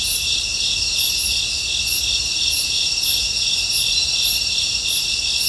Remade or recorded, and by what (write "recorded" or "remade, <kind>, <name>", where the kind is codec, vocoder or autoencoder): recorded